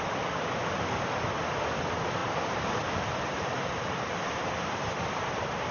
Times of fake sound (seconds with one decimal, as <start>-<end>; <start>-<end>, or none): none